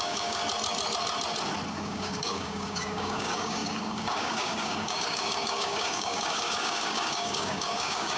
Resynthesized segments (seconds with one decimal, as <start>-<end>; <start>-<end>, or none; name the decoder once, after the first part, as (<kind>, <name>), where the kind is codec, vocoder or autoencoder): 0.0-0.4 (codec, DAC); 1.7-8.2